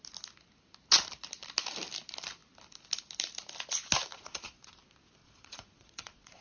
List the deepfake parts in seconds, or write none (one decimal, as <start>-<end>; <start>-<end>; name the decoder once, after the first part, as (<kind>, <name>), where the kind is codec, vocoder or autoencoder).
4.1-4.8 (vocoder, Vocos); 5.2-6.4